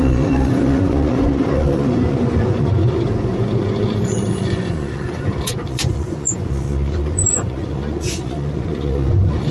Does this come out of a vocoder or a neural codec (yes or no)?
yes